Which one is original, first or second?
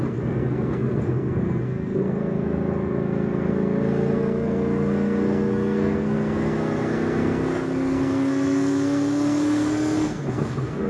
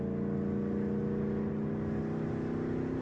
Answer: second